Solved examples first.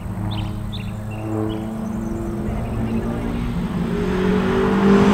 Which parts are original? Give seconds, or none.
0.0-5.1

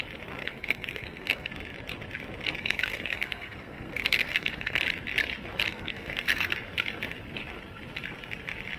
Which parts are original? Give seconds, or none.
0.0-0.4; 1.5-2.6; 4.8-5.7; 6.5-8.8

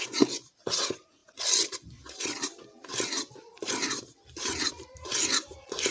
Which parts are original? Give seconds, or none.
0.0-5.9

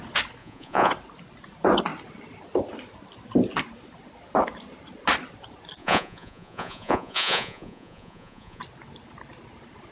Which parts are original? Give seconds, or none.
0.0-0.4; 0.9-5.8; 8.6-9.9

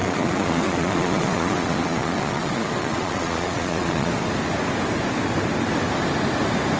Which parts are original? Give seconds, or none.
4.1-6.8

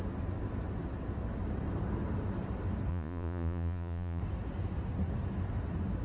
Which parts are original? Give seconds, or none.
0.0-2.9; 4.2-6.0

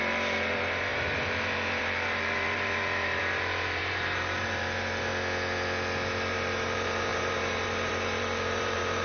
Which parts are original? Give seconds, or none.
5.1-6.3

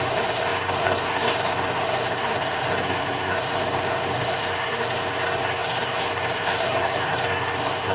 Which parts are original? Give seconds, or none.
none